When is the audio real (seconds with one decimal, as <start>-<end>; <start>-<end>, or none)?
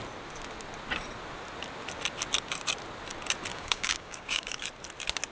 0.0-3.5; 4.6-5.3